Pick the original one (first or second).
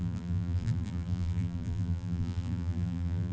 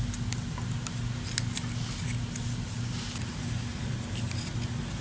second